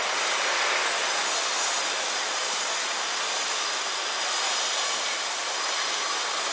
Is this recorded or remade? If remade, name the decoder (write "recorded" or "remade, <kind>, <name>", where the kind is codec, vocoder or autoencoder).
recorded